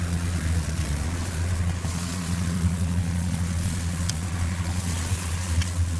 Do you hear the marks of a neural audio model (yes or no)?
yes